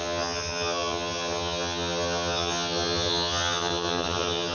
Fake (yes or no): yes